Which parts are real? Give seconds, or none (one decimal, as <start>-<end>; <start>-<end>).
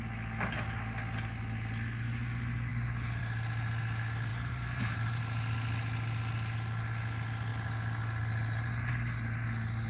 0.0-4.3; 5.2-9.9